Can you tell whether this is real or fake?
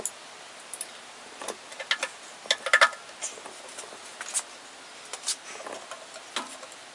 real